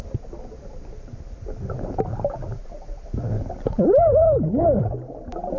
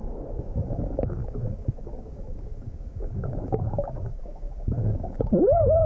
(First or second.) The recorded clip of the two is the first